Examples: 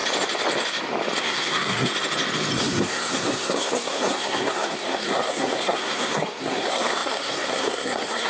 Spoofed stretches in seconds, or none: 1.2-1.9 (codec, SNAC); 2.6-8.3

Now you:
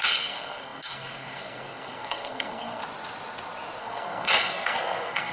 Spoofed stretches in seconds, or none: 0.0-2.8 (codec, SNAC); 3.8-5.3

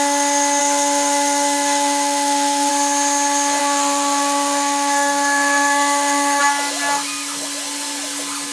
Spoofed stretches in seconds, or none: 0.6-2.7 (codec, SNAC); 3.6-6.4